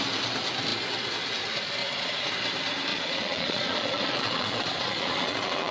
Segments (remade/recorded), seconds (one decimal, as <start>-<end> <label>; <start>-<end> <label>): 0.0-1.8 recorded; 1.8-2.3 remade; 2.3-2.9 recorded; 2.9-5.7 remade